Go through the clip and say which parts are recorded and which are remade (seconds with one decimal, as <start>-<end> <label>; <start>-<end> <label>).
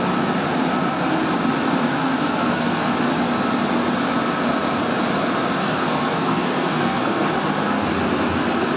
0.0-1.9 recorded; 1.9-2.9 remade; 2.9-5.6 recorded; 5.6-7.3 remade; 7.3-8.8 recorded